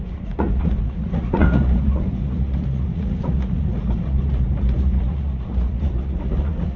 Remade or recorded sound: remade